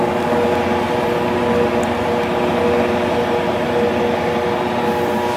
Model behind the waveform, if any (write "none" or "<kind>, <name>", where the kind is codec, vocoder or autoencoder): none